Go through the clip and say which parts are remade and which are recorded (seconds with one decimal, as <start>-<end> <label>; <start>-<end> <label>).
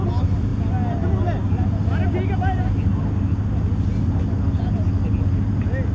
0.0-5.9 recorded